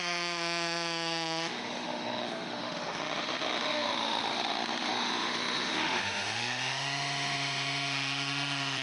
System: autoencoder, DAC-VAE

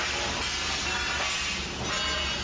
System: none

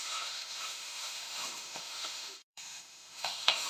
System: autoencoder, DAC-VAE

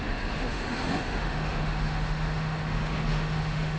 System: autoencoder, DAC-VAE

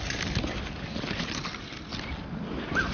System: none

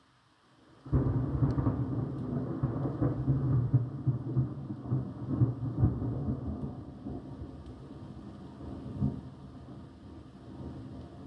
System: none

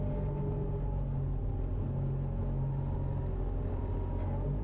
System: none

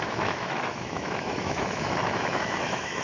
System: autoencoder, DAC-VAE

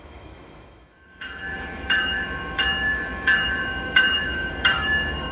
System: autoencoder, DAC-VAE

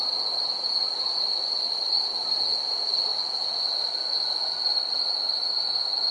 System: none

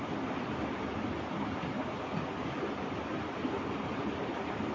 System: none